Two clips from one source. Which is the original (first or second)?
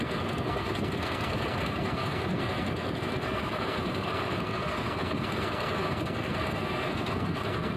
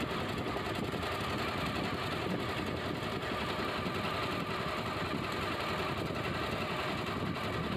second